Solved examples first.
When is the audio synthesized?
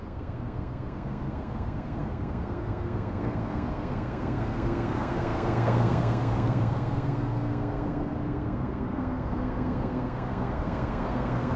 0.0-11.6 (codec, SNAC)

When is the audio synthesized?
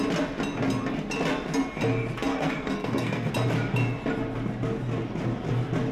2.3-3.3 (codec, SNAC)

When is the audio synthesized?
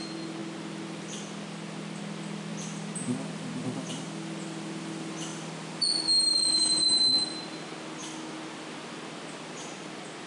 none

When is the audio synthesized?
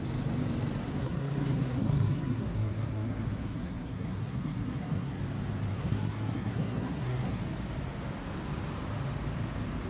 1.0-5.2 (codec, SNAC); 5.7-7.4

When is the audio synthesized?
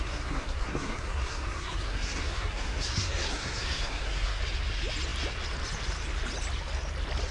0.0-4.4 (codec, SNAC)